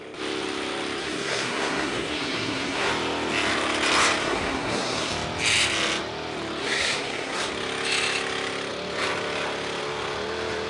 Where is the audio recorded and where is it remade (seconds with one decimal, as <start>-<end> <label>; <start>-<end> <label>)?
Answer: 0.0-1.0 recorded; 1.0-2.9 remade; 2.9-4.2 recorded; 4.2-5.1 remade; 5.1-6.6 recorded; 6.6-7.5 remade; 7.5-10.7 recorded